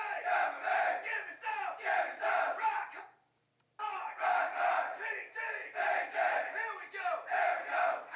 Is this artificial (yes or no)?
yes